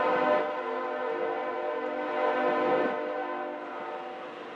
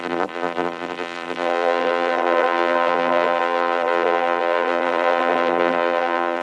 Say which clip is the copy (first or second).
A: second